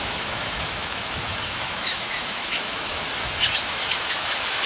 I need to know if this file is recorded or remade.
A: remade